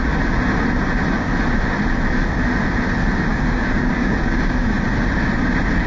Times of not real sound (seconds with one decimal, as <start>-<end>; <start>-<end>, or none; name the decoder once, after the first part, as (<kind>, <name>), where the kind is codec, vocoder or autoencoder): 3.3-4.8 (codec, DAC)